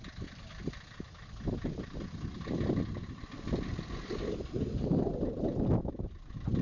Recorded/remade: recorded